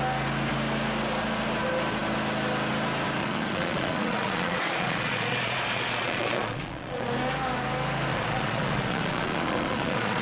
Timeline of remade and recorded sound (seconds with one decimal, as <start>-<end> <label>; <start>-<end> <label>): 0.0-3.2 recorded; 3.2-7.1 remade; 7.1-8.1 recorded; 8.1-10.2 remade